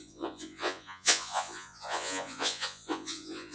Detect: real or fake fake